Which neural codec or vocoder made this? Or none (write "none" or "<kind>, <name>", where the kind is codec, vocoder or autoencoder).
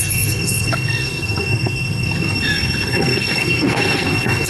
codec, SNAC